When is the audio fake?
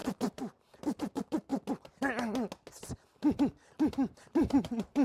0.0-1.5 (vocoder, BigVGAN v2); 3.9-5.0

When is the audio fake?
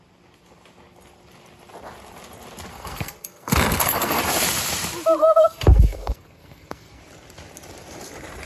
2.7-4.2 (codec, SNAC); 5.2-7.0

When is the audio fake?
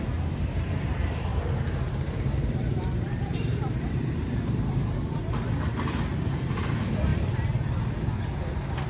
0.0-7.1 (vocoder, BigVGAN v2); 8.4-8.9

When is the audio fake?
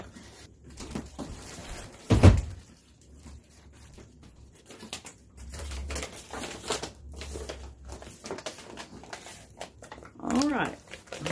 0.0-5.8 (vocoder, BigVGAN v2); 10.5-11.3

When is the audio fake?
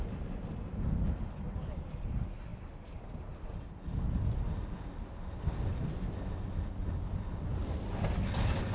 none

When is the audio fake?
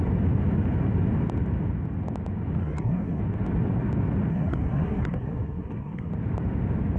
2.6-3.2 (codec, SNAC); 4.3-6.1